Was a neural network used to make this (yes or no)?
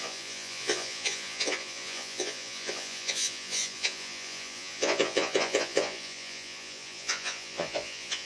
yes